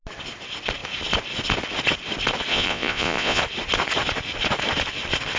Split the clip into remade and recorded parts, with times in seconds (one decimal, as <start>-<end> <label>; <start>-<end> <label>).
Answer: 0.0-2.5 recorded; 2.5-3.4 remade; 3.4-5.4 recorded

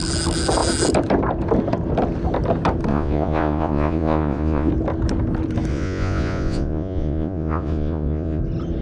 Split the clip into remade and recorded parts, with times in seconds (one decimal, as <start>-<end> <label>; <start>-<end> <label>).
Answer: 0.0-2.9 recorded; 2.9-4.7 remade; 4.7-5.7 recorded; 5.7-8.4 remade; 8.4-8.8 recorded

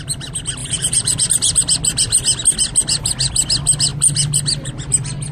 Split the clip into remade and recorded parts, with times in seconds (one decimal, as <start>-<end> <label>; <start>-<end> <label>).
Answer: 0.0-0.6 recorded; 0.6-1.3 remade; 1.3-5.3 recorded